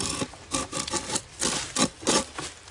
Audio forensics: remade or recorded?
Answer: recorded